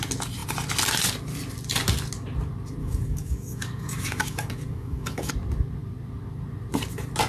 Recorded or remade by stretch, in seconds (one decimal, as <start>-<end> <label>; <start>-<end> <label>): 0.0-2.8 recorded; 2.8-5.3 remade; 5.3-7.3 recorded